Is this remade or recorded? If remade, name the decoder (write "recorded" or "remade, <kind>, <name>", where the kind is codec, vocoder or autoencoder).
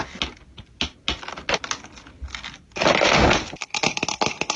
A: recorded